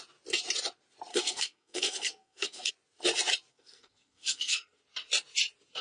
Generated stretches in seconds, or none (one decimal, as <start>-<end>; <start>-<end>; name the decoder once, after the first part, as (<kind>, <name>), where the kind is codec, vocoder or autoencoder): 1.1-2.7 (codec, SNAC); 3.5-4.8